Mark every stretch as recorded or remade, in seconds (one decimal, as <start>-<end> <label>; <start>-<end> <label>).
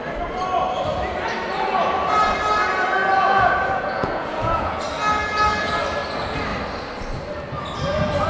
0.0-3.0 recorded; 3.0-4.8 remade; 4.8-8.3 recorded